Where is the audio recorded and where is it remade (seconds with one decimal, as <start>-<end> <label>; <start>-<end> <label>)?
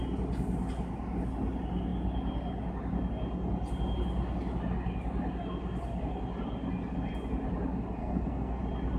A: 0.0-8.0 recorded; 8.0-8.6 remade; 8.6-9.0 recorded